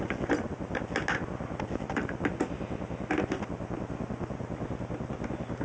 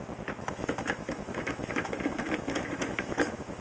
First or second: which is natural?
first